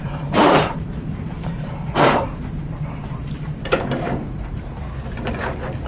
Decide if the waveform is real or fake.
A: fake